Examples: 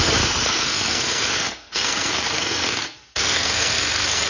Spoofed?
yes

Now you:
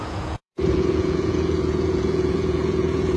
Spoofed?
yes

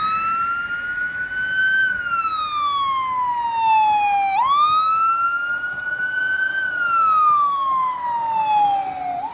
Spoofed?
no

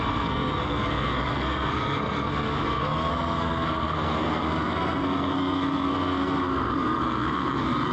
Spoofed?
yes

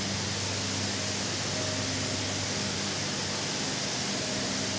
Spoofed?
no